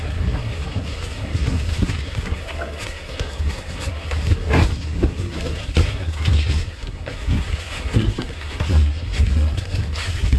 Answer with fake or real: fake